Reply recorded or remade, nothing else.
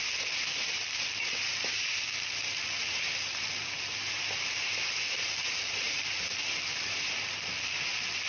recorded